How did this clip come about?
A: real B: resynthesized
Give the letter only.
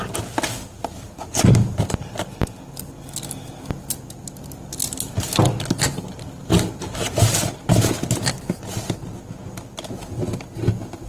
A